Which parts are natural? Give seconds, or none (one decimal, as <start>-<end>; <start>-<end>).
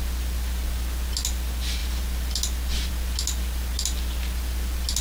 0.0-5.0